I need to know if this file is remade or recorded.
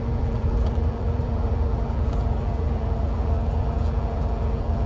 remade